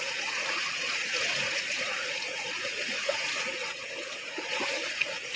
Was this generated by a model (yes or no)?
yes